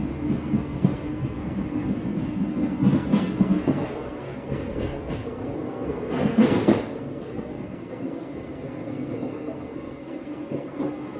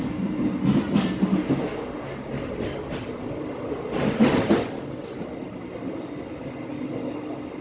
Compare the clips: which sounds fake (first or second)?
first